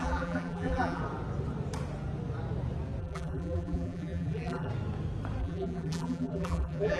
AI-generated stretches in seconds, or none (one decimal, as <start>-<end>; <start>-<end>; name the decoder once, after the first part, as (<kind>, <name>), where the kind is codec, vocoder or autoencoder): 0.0-1.0 (vocoder, BigVGAN v2); 3.0-4.7; 5.4-7.0